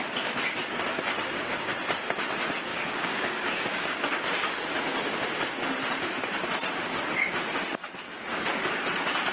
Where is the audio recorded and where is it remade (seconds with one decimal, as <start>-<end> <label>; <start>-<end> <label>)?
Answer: 0.0-2.7 recorded; 2.7-4.0 remade; 4.0-9.3 recorded